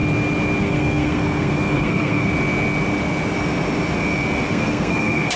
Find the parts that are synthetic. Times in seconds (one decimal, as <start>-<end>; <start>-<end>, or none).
0.6-2.3; 4.5-5.4